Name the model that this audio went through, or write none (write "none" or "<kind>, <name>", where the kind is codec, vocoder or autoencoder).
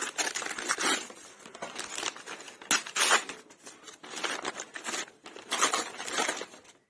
none